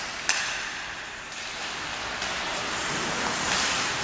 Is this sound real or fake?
real